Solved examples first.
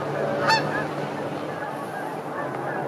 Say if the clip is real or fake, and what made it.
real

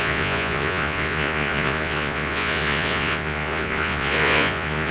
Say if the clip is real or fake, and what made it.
fake, vocoder, Vocos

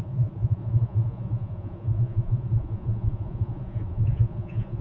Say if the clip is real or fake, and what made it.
fake, vocoder, Vocos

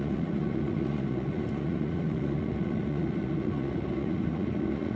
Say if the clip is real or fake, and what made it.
fake, vocoder, Vocos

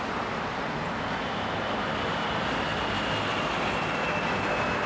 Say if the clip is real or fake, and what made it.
real